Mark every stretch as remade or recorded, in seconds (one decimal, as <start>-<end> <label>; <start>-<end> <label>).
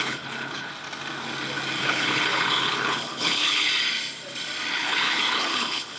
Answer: 0.0-0.7 remade; 0.7-1.8 recorded; 1.8-3.7 remade; 3.7-4.7 recorded; 4.7-6.0 remade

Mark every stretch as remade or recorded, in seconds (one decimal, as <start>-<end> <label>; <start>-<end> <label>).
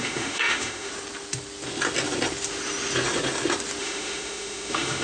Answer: 0.0-0.9 remade; 0.9-3.8 recorded; 3.8-5.0 remade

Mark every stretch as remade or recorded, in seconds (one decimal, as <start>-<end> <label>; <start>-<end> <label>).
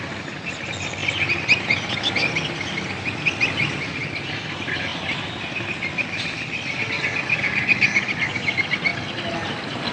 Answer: 0.0-9.9 recorded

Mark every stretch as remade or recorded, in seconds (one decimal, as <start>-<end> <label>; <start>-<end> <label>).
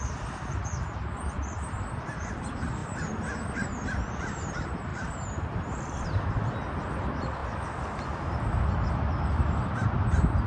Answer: 0.0-2.8 recorded; 2.8-4.5 remade; 4.5-4.9 recorded; 4.9-6.4 remade; 6.4-10.5 recorded